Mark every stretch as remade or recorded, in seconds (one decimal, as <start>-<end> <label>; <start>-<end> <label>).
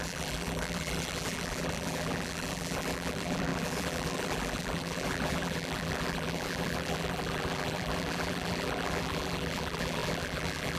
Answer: 0.0-10.8 remade